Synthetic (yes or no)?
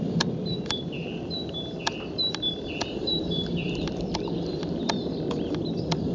yes